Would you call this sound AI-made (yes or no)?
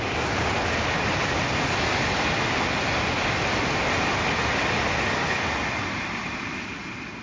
no